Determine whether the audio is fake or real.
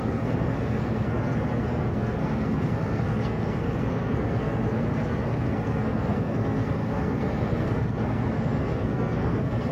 fake